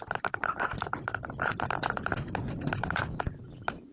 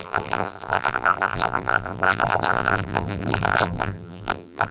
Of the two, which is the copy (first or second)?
second